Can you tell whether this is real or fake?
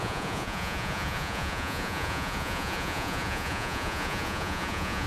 fake